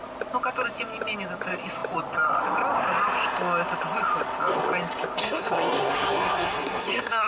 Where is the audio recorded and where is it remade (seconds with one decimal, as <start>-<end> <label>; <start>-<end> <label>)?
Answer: 0.0-5.2 recorded; 5.2-7.3 remade